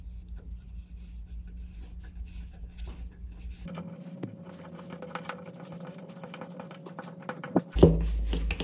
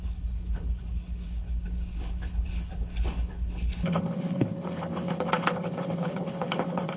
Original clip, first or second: first